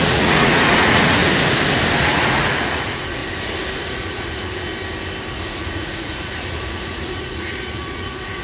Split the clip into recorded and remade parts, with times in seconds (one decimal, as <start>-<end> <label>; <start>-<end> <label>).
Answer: 0.0-1.2 remade; 1.2-2.0 recorded; 2.0-3.2 remade; 3.2-3.8 recorded; 3.8-4.7 remade; 4.7-5.3 recorded; 5.3-8.4 remade